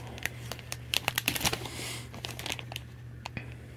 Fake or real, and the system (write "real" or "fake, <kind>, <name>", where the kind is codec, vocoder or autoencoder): fake, vocoder, BigVGAN v2